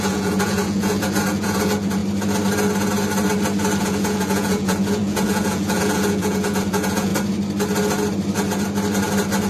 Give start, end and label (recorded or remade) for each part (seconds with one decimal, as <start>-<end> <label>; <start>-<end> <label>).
0.0-2.0 remade; 2.0-3.8 recorded; 3.8-7.1 remade; 7.1-9.5 recorded